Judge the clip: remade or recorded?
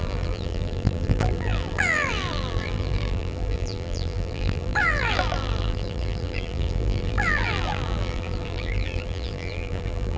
remade